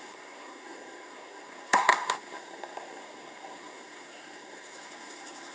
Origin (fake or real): fake